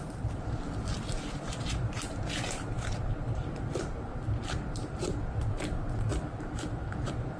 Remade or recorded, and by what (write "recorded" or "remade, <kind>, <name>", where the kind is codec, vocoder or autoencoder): recorded